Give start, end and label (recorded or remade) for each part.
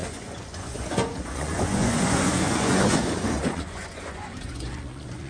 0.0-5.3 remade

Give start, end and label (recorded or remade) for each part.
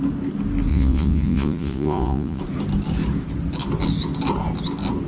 0.0-0.7 recorded; 0.7-2.4 remade; 2.4-5.1 recorded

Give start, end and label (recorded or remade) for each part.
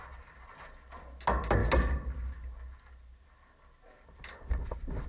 0.0-5.1 recorded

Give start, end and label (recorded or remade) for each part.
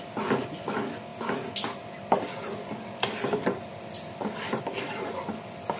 0.0-5.8 recorded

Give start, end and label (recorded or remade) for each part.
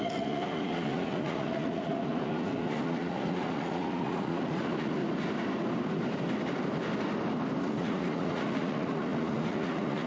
0.0-5.0 remade; 5.0-7.6 recorded; 7.6-10.1 remade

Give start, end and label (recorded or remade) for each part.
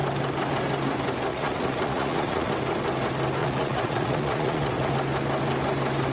0.0-1.3 recorded; 1.3-2.5 remade; 2.5-3.4 recorded; 3.4-4.9 remade; 4.9-6.1 recorded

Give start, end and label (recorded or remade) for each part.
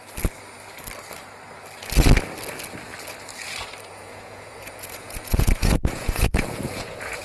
0.0-3.9 recorded; 3.9-7.2 remade